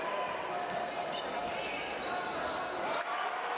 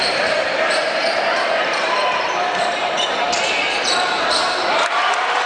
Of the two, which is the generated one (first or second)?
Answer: second